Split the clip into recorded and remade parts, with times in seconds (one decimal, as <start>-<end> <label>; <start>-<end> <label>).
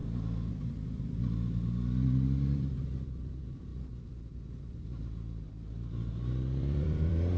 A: 0.0-0.5 recorded; 0.5-3.7 remade; 3.7-6.1 recorded; 6.1-7.4 remade